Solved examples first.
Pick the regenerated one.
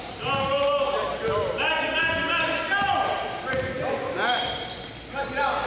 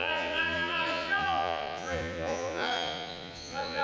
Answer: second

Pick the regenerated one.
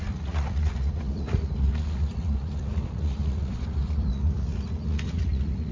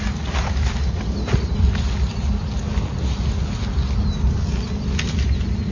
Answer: first